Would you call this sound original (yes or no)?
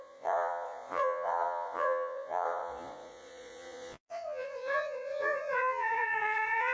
no